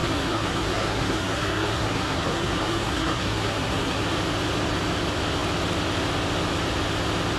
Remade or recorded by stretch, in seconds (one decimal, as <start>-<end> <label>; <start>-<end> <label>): 0.0-4.0 remade; 4.0-7.4 recorded